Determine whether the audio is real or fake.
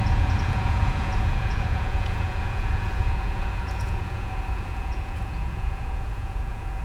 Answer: fake